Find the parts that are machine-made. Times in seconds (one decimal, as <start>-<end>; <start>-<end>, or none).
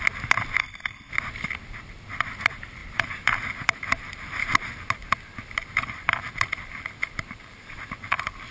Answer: 0.6-1.1